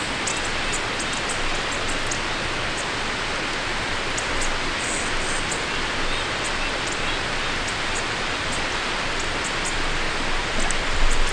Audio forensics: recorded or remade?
recorded